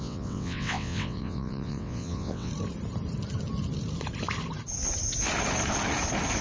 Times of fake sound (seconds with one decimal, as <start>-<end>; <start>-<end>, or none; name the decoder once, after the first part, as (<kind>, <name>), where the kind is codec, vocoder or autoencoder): 0.0-2.5 (vocoder, WaveNeXt)